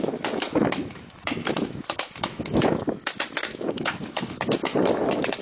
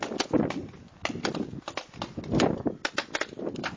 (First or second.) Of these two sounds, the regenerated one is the first